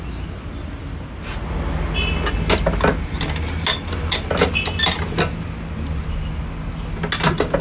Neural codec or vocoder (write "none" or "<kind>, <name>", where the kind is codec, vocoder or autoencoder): none